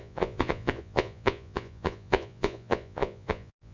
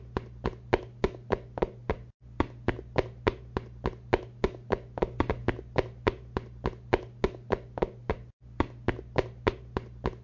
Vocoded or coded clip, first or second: first